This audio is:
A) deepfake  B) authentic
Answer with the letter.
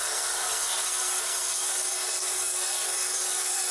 A